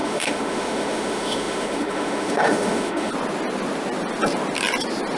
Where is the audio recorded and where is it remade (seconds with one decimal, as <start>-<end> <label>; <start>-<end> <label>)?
0.0-3.1 remade; 3.1-5.2 recorded